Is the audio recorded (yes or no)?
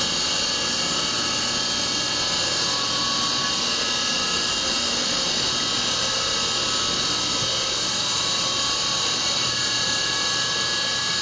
yes